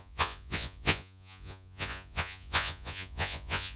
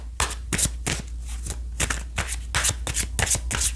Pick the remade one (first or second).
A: first